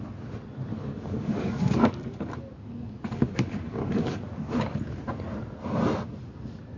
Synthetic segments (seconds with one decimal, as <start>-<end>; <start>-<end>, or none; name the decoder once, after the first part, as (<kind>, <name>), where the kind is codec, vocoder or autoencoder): 0.7-4.8 (codec, DAC)